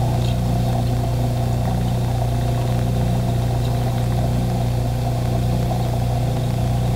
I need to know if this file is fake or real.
real